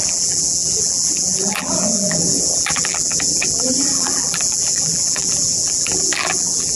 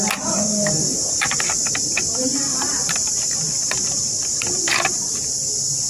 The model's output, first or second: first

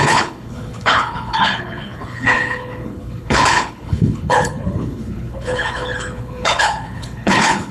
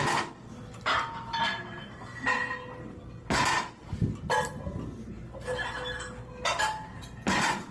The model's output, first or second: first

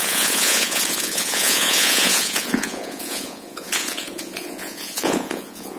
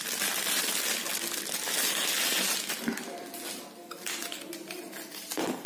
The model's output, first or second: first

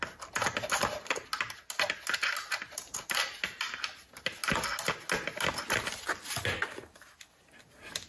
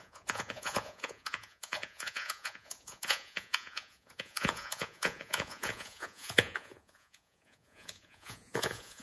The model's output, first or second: second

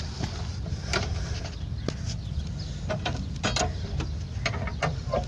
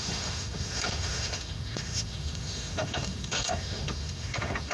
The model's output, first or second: second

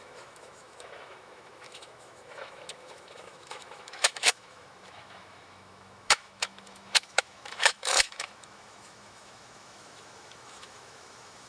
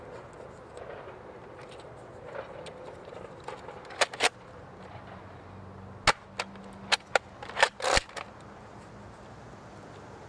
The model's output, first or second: first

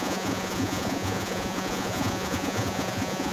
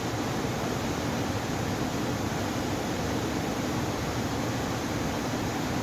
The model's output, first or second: first